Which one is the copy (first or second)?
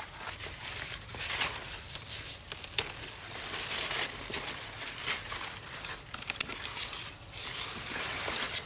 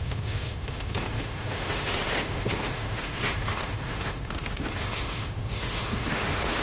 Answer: second